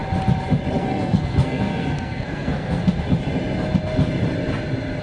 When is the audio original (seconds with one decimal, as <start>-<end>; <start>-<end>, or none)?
0.0-0.8; 2.8-5.0